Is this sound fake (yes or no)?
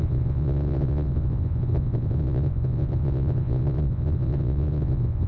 yes